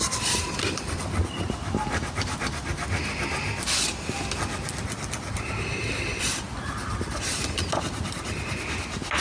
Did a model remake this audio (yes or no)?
no